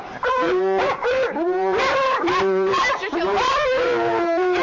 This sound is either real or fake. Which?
fake